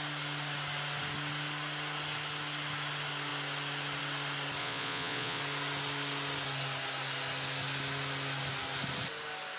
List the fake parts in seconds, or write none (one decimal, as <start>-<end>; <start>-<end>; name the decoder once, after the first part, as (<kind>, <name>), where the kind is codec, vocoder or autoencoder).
4.6-5.4 (vocoder, Vocos)